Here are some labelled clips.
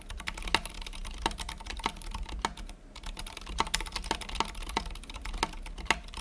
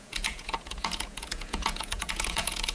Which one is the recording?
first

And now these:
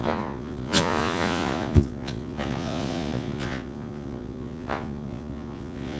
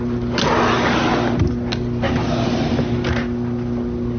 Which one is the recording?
second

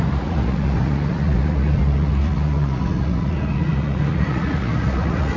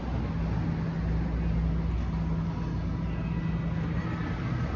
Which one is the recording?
second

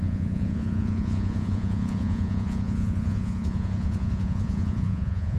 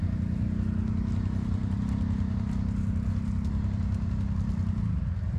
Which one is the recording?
second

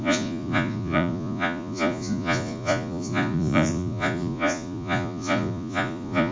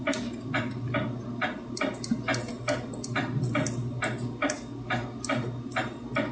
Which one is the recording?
second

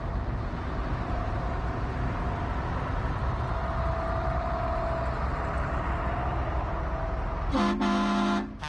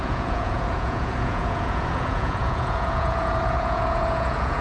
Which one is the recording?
first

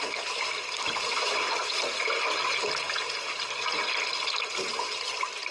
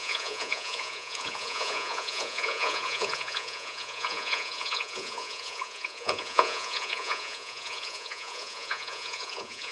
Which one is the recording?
first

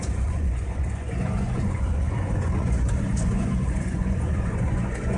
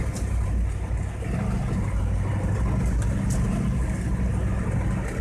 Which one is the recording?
second